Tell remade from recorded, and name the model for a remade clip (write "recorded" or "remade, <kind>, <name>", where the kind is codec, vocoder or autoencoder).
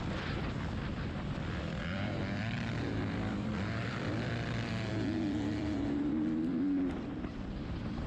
remade, vocoder, BigVGAN v2